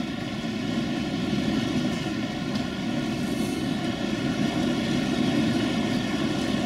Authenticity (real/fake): real